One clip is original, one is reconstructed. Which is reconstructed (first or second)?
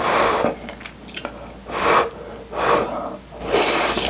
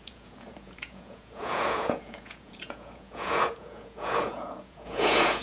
second